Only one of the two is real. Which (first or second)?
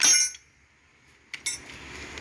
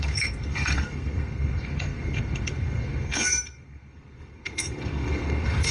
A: first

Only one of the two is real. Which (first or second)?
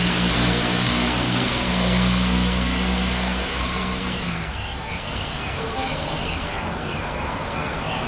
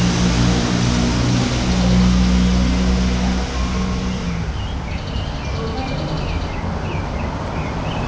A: second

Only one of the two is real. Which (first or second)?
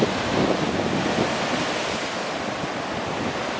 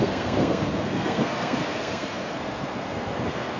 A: first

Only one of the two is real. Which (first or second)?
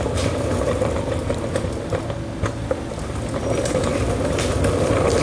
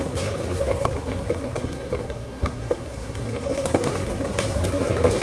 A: first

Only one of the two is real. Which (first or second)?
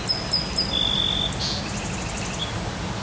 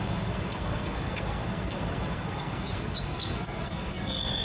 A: first